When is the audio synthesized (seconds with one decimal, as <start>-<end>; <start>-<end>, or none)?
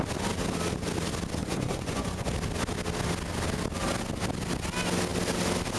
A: 1.4-2.3